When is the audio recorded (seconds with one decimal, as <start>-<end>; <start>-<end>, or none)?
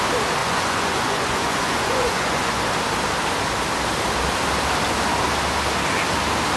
0.0-0.4; 2.6-6.6